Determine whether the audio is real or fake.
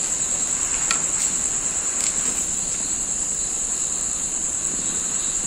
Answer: real